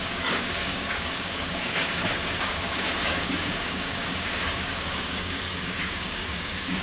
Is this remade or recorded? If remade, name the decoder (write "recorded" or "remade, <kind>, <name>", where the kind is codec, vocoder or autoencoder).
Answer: remade, codec, DAC